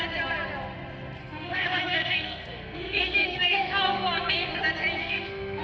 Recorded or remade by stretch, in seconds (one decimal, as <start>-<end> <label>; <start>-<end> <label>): 0.0-1.2 recorded; 1.2-4.6 remade; 4.6-5.0 recorded; 5.0-5.6 remade